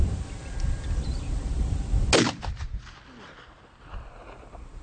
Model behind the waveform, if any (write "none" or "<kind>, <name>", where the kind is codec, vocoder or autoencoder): none